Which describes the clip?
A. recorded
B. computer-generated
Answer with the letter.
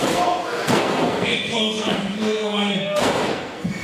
B